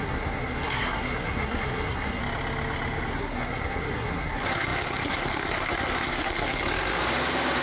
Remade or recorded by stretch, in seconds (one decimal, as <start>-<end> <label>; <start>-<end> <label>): 0.0-2.2 remade; 2.2-3.1 recorded; 3.1-6.6 remade; 6.6-7.6 recorded